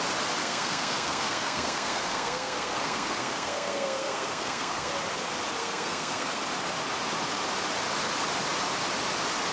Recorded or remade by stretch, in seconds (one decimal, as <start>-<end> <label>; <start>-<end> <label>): 0.0-0.4 recorded; 0.4-4.9 remade; 4.9-5.6 recorded; 5.6-6.4 remade; 6.4-9.5 recorded

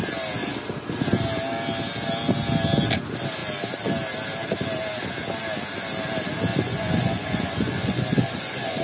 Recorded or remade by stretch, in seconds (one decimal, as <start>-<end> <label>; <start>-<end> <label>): 0.0-6.5 recorded; 6.5-8.8 remade

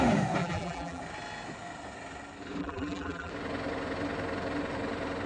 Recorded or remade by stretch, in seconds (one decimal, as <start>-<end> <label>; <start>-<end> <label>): 0.0-0.4 recorded; 0.4-1.0 remade; 1.0-2.6 recorded; 2.6-3.3 remade; 3.3-5.3 recorded

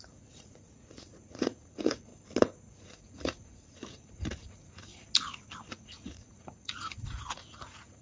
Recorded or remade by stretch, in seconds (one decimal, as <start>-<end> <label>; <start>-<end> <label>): 0.0-2.1 remade; 2.1-2.7 recorded; 2.7-4.9 remade; 4.9-5.7 recorded; 5.7-8.0 remade

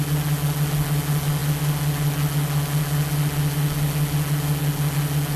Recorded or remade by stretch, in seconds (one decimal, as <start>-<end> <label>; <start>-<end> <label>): 0.0-5.4 recorded

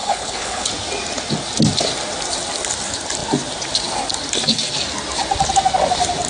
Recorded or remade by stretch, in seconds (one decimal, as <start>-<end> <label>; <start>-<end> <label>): 0.0-0.7 remade; 0.7-6.3 recorded

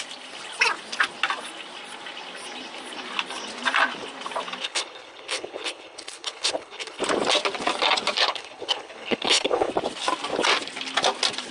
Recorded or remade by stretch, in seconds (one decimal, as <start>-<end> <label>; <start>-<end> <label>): 0.0-4.6 recorded; 4.6-7.0 remade; 7.0-8.2 recorded; 8.2-9.7 remade; 9.7-11.5 recorded